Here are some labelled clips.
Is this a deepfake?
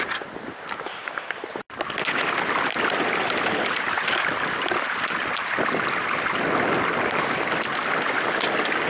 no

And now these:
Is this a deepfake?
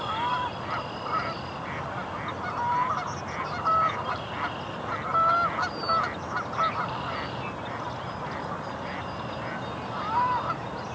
no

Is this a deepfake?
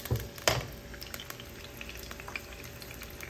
no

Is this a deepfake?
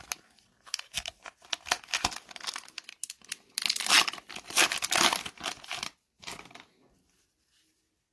no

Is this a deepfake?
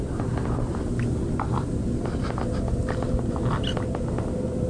no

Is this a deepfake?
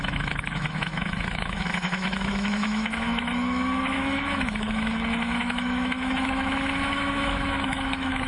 yes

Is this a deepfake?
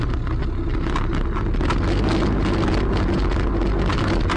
no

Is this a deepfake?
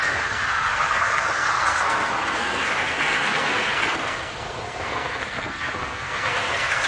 yes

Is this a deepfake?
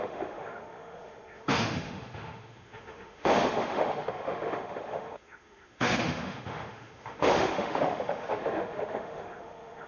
yes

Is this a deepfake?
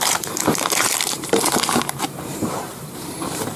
yes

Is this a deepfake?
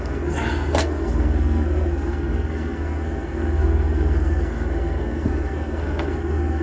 yes